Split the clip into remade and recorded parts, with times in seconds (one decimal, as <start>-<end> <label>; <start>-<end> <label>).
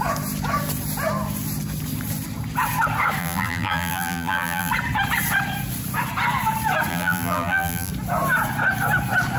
0.0-3.2 recorded; 3.2-4.7 remade; 4.7-6.9 recorded; 6.9-7.9 remade; 7.9-9.4 recorded